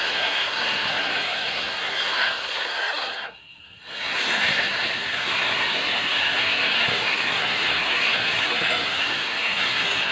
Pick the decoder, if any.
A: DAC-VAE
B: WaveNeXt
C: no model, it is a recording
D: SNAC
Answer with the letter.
D